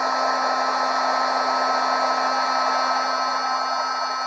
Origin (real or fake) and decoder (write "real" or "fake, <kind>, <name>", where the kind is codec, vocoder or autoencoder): real